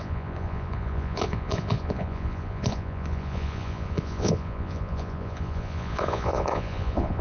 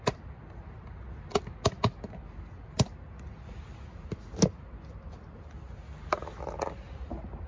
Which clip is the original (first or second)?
second